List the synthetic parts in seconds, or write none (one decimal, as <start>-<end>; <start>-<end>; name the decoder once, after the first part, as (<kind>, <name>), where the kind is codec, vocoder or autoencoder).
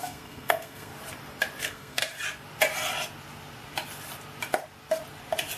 0.0-0.9 (codec, SNAC); 1.6-2.0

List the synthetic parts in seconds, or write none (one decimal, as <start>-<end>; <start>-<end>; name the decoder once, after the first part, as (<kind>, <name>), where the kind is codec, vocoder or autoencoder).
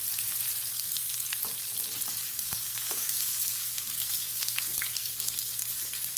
0.7-1.4 (codec, SNAC); 2.3-6.2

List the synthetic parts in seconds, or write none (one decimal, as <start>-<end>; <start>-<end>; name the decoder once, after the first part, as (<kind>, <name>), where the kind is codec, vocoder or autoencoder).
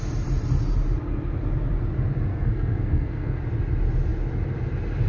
2.3-3.4 (codec, SNAC)